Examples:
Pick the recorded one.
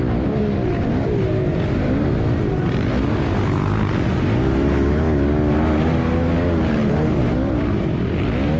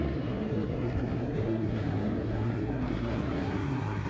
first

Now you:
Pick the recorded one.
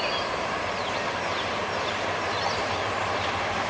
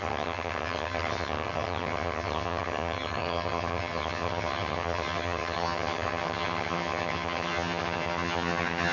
first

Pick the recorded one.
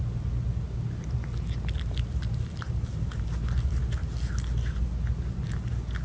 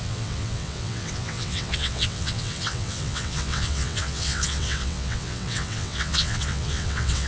first